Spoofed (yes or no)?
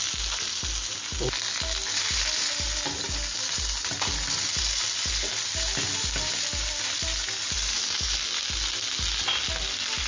no